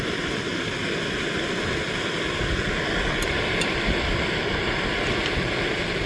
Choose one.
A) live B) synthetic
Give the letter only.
A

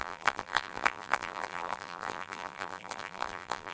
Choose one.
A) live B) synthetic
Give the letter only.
B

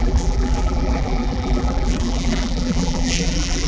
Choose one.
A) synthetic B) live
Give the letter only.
A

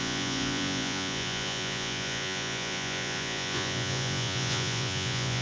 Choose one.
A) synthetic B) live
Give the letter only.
A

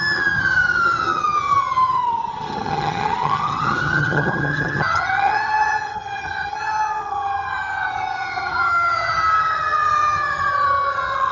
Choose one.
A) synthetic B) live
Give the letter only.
A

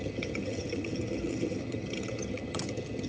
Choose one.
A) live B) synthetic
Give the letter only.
B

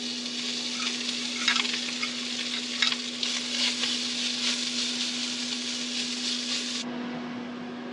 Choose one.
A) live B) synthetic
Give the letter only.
A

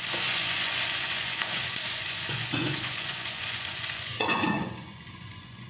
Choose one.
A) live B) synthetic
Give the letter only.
B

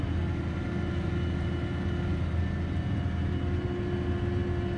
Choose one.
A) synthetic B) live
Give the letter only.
B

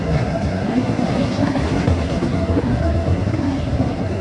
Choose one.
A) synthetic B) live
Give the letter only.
A